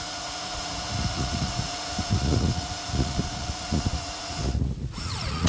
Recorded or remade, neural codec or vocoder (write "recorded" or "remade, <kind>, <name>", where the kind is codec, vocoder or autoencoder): remade, vocoder, Vocos